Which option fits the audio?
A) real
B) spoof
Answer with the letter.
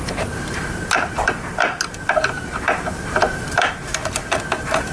B